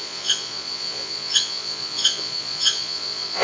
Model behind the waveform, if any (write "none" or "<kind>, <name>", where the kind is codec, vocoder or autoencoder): vocoder, Vocos